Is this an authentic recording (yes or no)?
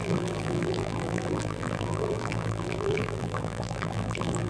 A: no